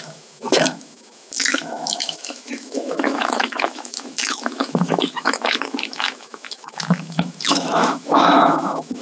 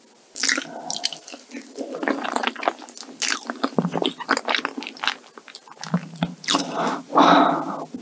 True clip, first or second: second